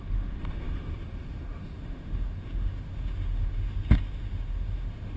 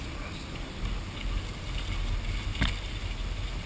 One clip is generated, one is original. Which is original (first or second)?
second